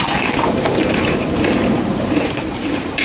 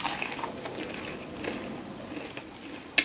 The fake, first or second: first